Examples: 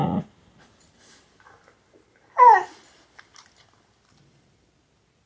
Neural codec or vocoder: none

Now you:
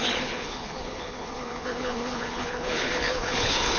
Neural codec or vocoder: codec, HILCodec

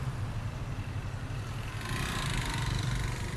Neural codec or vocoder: vocoder, BigVGAN v2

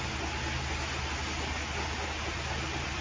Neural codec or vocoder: none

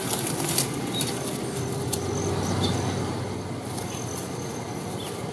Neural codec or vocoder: none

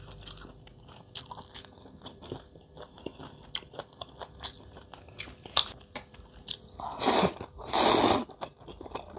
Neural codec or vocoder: none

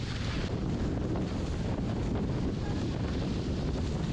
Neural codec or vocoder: vocoder, BigVGAN v2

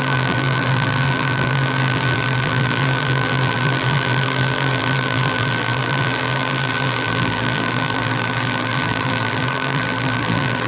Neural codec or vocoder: vocoder, BigVGAN v2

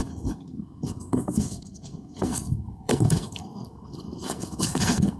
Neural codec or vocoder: codec, SNAC